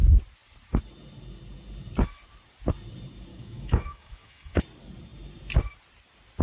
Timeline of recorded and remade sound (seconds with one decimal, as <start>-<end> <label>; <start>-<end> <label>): 0.0-3.3 recorded; 3.3-4.6 remade; 4.6-6.4 recorded